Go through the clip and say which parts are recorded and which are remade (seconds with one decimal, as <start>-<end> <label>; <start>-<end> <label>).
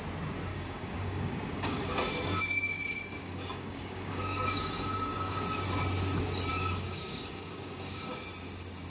0.0-0.5 recorded; 0.5-5.4 remade; 5.4-6.5 recorded; 6.5-8.1 remade; 8.1-8.9 recorded